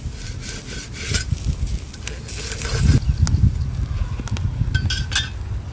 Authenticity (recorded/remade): recorded